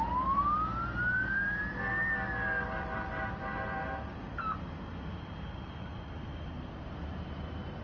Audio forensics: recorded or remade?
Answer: recorded